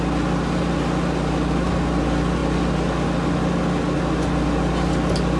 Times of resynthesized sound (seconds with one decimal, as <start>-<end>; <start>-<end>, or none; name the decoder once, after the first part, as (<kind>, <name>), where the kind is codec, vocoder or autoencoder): none